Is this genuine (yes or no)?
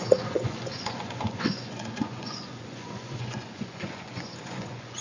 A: no